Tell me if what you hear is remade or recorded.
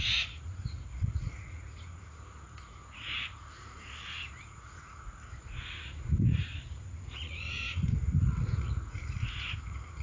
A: remade